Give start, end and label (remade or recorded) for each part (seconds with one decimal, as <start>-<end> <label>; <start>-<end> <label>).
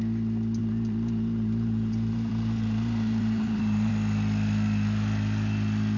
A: 0.0-0.6 recorded; 0.6-3.9 remade; 3.9-6.0 recorded